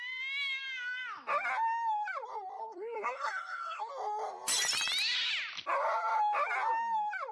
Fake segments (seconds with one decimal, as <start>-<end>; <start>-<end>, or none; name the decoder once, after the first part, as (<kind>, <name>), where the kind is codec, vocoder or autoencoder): 2.6-3.9 (codec, SNAC)